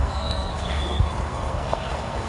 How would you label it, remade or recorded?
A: remade